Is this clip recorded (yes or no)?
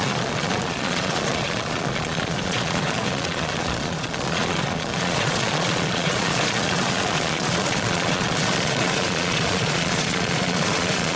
no